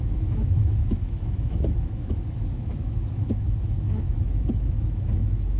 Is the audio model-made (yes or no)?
yes